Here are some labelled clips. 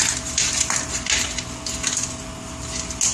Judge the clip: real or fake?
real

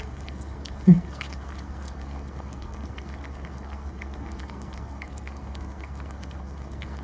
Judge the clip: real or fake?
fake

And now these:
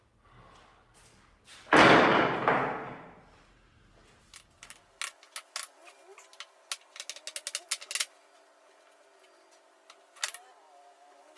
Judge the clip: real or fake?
real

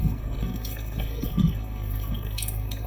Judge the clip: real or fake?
fake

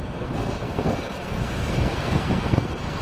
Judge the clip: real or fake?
fake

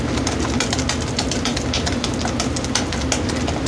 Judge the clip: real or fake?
real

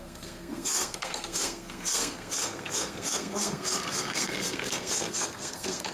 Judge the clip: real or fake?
fake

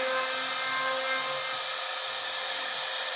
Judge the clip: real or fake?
real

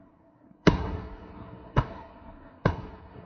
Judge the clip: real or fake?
fake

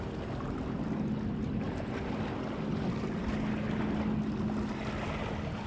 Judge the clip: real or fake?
real